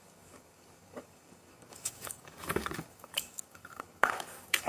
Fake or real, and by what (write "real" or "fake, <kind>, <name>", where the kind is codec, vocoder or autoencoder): fake, codec, DAC